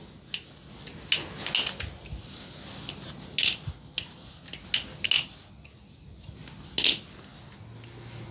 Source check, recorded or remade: recorded